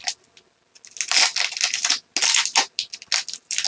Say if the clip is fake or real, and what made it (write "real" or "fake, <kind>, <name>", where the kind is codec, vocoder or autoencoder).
real